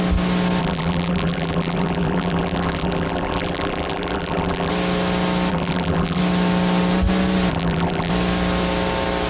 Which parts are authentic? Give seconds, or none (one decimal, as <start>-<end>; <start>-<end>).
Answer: 0.0-0.6; 4.7-5.5; 6.2-7.5; 8.1-9.3

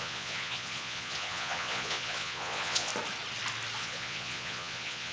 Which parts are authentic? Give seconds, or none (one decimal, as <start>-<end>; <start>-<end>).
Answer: 2.9-3.8

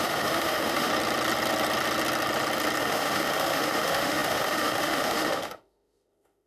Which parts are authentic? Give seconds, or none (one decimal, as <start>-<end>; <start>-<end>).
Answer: 0.9-2.8

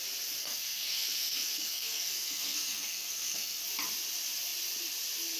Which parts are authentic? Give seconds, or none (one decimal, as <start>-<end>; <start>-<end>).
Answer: 0.0-0.4; 3.6-5.4